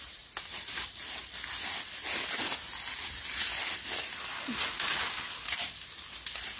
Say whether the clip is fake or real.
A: real